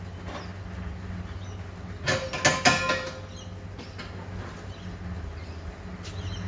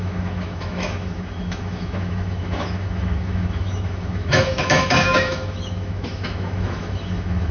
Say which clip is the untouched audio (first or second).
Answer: first